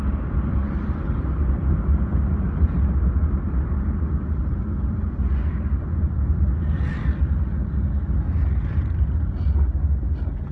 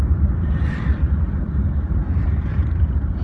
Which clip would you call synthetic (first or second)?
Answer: second